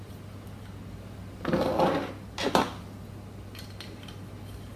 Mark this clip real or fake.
real